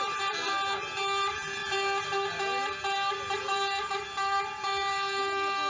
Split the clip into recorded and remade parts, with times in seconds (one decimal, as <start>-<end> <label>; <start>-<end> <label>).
0.0-5.7 remade